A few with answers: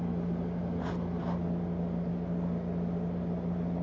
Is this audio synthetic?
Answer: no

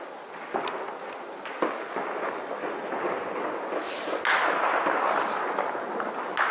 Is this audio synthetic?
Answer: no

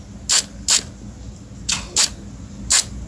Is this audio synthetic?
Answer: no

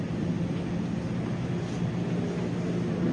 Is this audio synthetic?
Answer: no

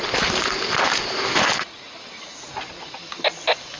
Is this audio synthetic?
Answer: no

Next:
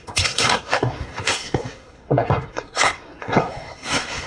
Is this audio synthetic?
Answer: yes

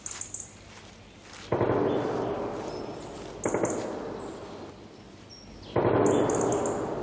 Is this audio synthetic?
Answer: no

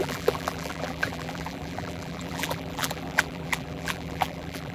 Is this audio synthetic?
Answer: yes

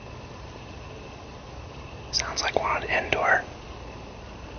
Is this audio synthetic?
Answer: no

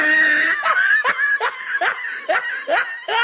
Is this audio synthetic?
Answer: no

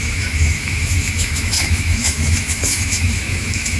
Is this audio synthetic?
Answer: yes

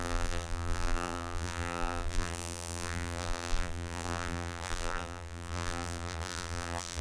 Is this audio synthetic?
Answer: yes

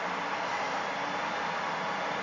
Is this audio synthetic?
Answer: no